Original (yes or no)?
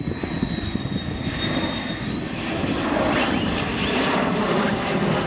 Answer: yes